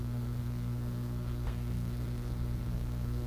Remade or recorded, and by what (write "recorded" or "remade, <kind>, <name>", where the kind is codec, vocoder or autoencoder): remade, codec, SNAC